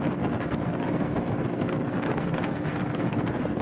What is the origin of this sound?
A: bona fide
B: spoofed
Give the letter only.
B